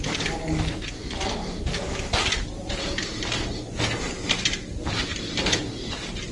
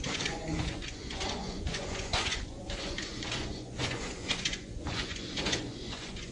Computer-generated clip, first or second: second